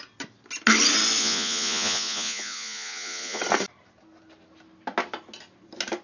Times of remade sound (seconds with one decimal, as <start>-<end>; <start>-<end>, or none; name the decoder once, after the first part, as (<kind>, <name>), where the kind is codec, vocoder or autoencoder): 1.2-3.4 (vocoder, Vocos)